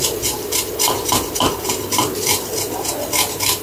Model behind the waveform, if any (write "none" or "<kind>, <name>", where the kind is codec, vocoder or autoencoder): none